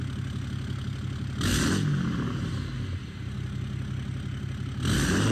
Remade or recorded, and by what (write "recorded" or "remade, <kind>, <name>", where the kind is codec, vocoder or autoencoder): recorded